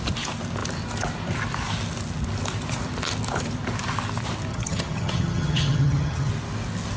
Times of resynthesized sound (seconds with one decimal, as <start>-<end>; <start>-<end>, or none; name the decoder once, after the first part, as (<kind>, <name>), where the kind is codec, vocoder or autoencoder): 4.5-6.3 (vocoder, HiFi-GAN)